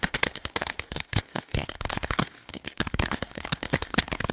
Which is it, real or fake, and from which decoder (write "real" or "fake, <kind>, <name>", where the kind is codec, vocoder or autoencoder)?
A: fake, codec, SNAC